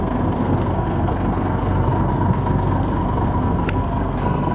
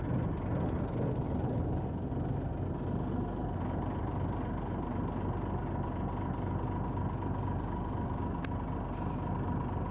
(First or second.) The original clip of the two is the second